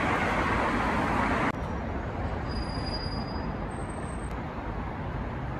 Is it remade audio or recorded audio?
recorded